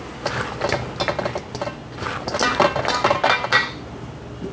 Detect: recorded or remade recorded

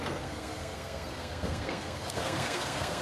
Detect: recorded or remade remade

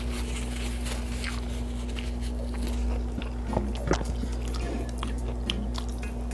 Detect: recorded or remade recorded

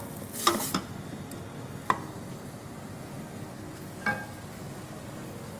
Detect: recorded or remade recorded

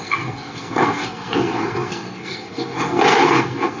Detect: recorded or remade remade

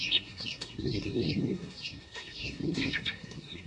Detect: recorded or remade remade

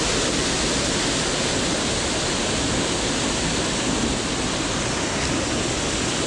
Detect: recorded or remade recorded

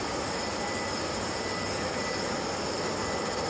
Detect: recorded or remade recorded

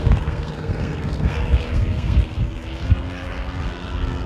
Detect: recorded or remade remade